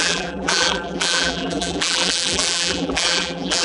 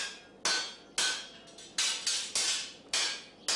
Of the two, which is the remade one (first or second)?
first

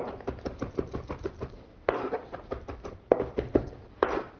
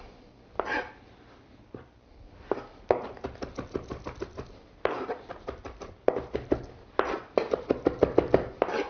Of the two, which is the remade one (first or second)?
first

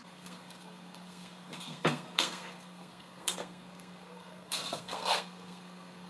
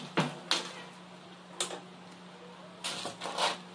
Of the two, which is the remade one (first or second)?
first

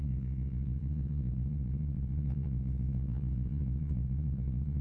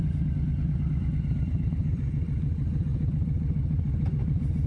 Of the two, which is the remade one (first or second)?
first